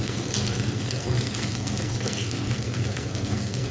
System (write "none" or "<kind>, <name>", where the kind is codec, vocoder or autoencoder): codec, SNAC